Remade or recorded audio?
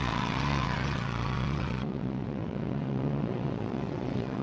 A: remade